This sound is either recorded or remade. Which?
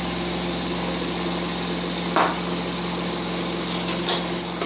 recorded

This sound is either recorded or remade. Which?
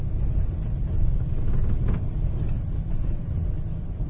recorded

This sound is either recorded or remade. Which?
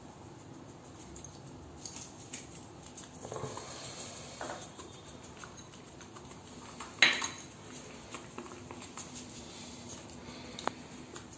recorded